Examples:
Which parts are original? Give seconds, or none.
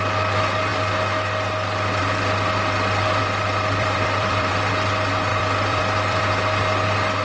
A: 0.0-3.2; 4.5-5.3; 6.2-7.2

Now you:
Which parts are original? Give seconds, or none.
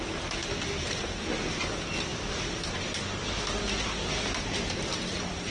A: 0.0-2.1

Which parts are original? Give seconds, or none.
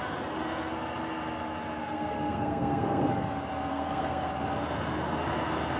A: 0.0-1.8; 3.1-3.7; 4.3-5.8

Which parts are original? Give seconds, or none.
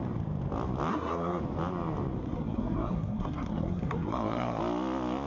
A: 0.0-0.9; 1.4-2.2; 4.6-5.3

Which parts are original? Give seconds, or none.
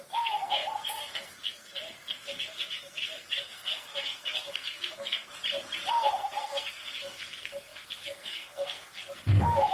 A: 5.3-5.9